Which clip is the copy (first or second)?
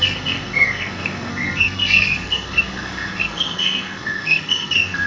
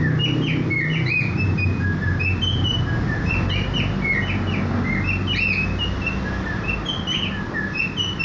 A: first